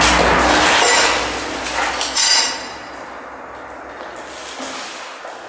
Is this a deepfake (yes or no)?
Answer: no